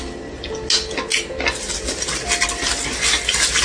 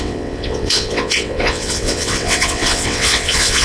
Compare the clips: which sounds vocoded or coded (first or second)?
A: second